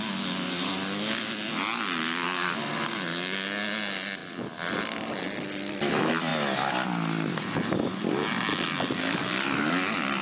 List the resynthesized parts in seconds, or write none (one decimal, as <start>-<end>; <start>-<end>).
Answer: 4.2-5.2